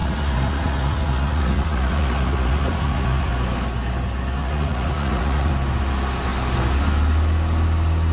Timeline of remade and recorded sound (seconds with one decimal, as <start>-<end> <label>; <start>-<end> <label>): 0.0-3.3 remade; 3.3-4.4 recorded; 4.4-5.5 remade; 5.5-8.1 recorded